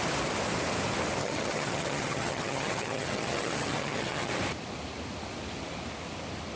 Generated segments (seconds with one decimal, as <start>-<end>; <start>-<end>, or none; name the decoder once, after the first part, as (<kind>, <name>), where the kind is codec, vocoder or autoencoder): 1.2-4.3 (vocoder, HiFi-GAN)